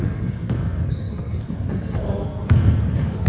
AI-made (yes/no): yes